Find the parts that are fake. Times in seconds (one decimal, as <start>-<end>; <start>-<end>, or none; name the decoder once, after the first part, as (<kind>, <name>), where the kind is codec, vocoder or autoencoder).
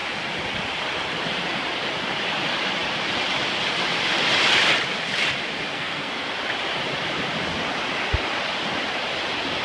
5.7-6.3 (codec, SNAC)